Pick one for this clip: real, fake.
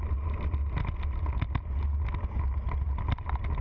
real